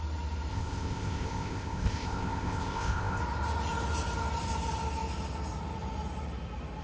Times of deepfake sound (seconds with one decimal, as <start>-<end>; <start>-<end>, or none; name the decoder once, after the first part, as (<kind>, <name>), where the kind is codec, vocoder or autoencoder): 0.5-3.2 (codec, ZipCodec)